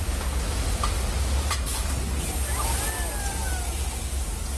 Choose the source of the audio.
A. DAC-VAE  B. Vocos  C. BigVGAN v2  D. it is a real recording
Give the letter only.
D